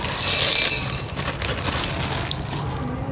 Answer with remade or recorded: recorded